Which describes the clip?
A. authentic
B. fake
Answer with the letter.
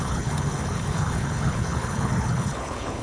B